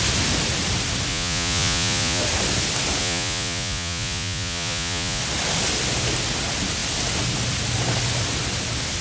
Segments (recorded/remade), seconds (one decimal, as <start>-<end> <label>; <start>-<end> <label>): 0.0-1.1 recorded; 1.1-2.2 remade; 2.2-3.0 recorded; 3.0-5.2 remade; 5.2-9.0 recorded